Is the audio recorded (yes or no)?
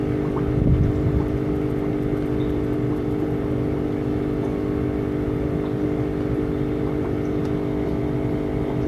yes